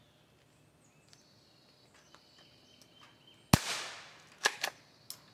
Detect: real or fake real